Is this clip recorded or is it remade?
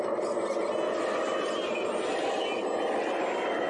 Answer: recorded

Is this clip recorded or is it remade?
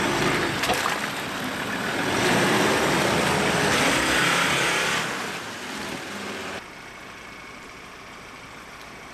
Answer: recorded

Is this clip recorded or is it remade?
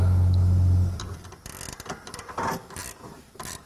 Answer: recorded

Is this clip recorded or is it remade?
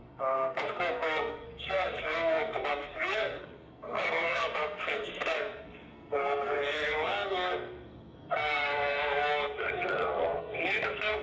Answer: remade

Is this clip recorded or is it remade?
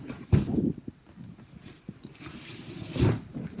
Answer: recorded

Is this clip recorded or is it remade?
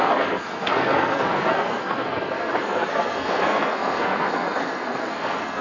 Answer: remade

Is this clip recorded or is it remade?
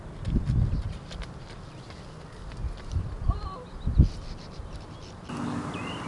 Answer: recorded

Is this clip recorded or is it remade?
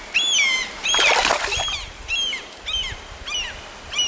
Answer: recorded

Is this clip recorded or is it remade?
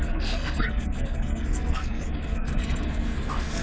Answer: remade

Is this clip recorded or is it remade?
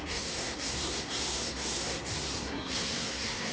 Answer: remade